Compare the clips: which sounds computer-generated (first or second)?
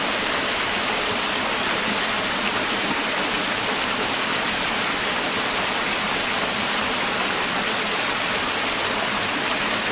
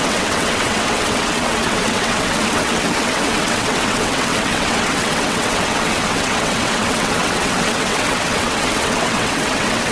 second